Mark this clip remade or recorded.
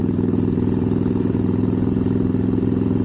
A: recorded